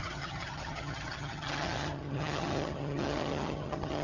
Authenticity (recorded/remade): remade